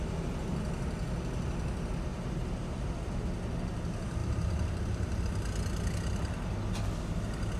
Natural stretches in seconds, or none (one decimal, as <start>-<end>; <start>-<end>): 0.0-2.1; 3.2-4.2; 5.2-7.6